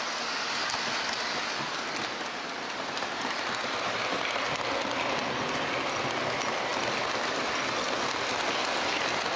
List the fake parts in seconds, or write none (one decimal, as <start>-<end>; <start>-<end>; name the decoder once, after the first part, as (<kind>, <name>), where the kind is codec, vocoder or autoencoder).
none